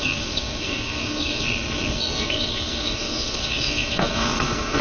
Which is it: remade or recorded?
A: remade